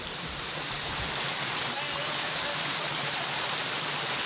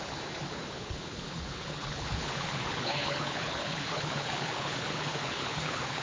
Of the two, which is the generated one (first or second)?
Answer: second